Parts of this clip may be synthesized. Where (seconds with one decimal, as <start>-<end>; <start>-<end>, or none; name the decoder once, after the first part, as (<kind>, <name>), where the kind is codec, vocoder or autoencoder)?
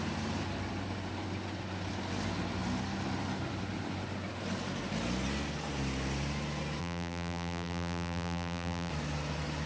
6.8-8.9 (vocoder, BigVGAN v2)